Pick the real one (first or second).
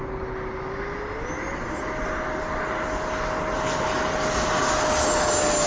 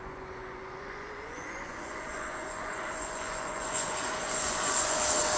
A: first